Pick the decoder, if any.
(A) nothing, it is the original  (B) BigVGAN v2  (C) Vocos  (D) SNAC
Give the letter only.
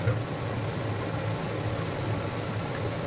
A